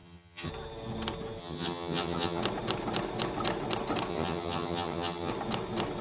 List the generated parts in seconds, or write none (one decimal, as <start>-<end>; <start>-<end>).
0.0-0.5; 1.4-2.4; 4.1-5.3